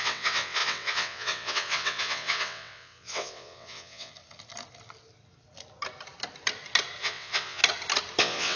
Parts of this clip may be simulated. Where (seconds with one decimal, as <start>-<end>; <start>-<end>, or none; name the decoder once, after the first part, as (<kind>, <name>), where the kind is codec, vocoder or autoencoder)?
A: 0.0-4.1 (vocoder, WaveNeXt); 7.0-7.6; 8.2-8.6

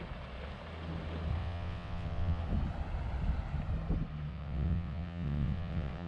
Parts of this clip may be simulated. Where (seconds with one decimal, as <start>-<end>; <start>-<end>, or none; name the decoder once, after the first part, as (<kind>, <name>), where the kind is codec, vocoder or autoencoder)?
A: 1.4-2.4 (vocoder, WaveNeXt); 4.3-6.1

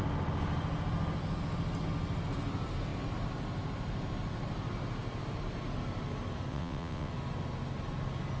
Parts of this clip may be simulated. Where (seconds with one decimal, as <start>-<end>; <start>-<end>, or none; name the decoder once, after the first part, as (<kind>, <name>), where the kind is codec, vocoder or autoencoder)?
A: 6.5-7.1 (vocoder, WaveNeXt)